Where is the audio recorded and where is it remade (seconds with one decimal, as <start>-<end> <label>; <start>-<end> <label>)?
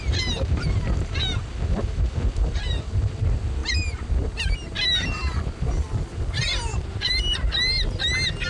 0.0-8.5 recorded